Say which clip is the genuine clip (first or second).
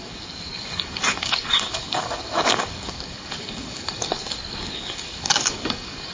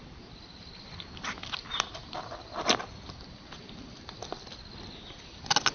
second